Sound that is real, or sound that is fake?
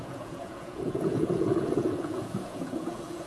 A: fake